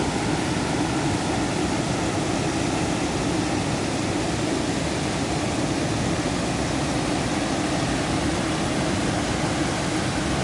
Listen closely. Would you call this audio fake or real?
real